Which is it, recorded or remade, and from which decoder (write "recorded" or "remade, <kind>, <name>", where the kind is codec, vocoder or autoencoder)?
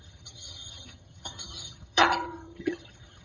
remade, vocoder, HiFi-GAN